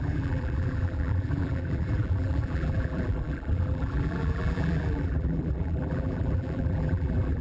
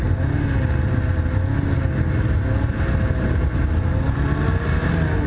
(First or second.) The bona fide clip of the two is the second